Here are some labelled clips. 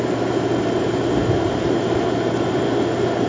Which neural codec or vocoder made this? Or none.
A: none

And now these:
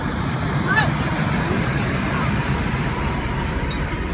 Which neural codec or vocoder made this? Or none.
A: vocoder, BigVGAN v2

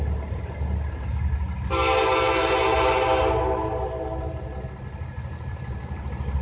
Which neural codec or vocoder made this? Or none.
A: none